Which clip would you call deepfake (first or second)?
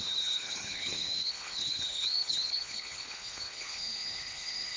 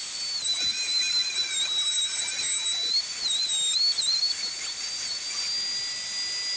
first